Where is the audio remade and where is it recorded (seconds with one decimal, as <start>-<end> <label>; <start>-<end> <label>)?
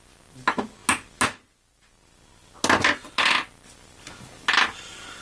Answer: 0.0-5.2 recorded